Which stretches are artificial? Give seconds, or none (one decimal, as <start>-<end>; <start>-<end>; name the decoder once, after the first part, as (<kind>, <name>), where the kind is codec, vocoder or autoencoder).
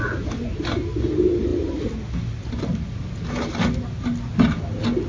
none